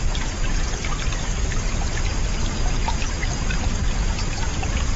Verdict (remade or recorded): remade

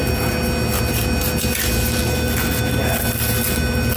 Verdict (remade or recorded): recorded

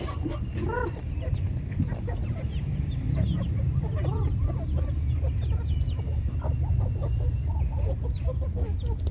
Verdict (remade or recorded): recorded